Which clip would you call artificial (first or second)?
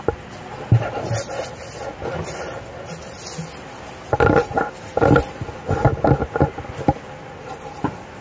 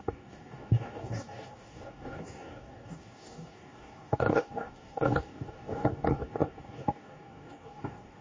second